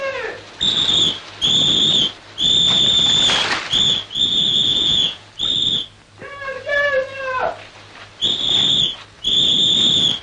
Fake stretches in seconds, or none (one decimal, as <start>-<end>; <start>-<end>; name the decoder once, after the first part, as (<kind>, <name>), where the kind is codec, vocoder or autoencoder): 4.7-5.3 (vocoder, Vocos)